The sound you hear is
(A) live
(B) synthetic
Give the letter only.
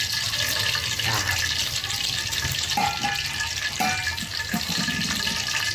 A